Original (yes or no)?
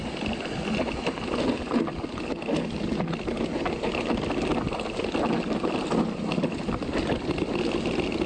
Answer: yes